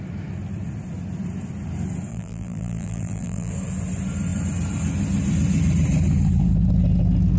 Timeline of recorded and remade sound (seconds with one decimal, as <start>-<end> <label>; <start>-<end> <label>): 0.0-2.1 recorded; 2.1-3.5 remade; 3.5-7.4 recorded